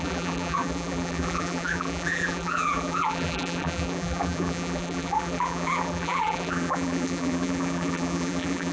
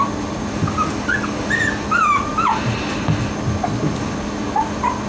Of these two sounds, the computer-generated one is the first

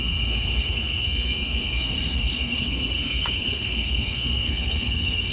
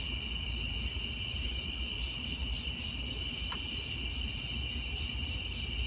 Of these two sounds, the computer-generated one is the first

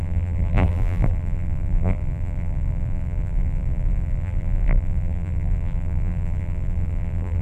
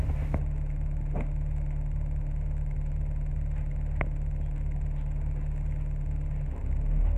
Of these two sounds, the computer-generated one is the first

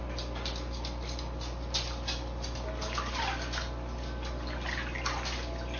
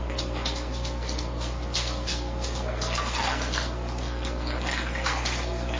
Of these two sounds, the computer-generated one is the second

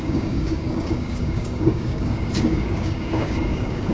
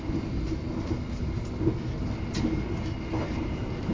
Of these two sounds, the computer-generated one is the first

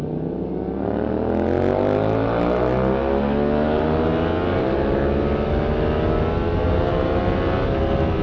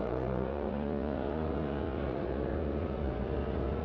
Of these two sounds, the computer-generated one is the second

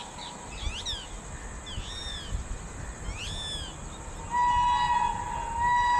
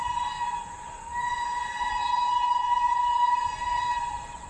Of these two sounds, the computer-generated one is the second